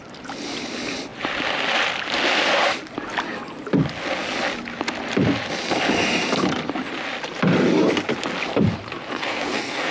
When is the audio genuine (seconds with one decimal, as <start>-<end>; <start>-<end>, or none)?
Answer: 0.0-9.1